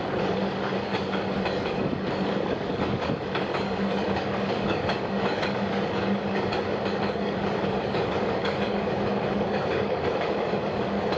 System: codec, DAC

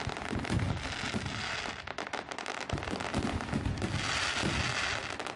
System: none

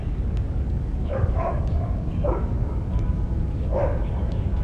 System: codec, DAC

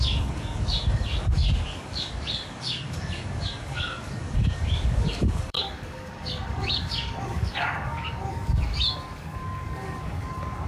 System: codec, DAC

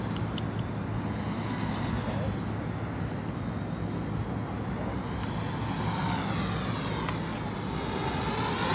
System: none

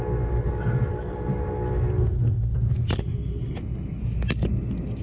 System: none